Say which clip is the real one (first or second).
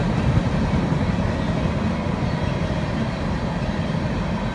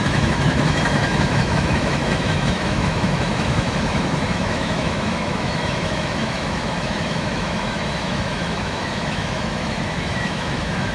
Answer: first